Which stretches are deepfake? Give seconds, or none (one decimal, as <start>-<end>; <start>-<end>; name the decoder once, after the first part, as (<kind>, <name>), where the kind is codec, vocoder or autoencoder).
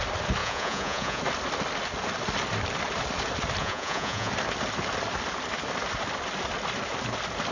0.4-1.2 (vocoder, Vocos); 3.6-4.3